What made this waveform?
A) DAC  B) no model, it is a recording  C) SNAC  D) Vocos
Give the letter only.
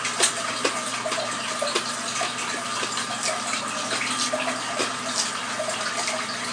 B